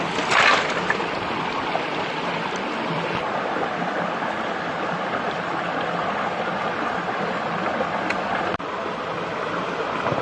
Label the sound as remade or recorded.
recorded